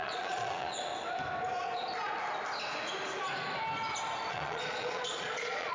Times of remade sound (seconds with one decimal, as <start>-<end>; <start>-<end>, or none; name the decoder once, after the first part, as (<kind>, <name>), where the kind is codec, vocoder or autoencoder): 0.0-0.9 (vocoder, Vocos); 4.3-5.7